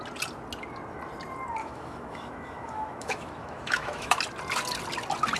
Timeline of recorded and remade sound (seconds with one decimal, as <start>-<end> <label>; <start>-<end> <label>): 0.0-1.6 recorded; 1.6-4.2 remade; 4.2-5.4 recorded